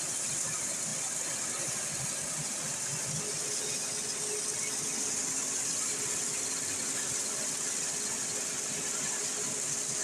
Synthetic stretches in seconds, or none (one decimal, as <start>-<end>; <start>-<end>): none